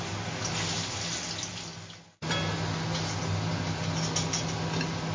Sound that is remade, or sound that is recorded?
recorded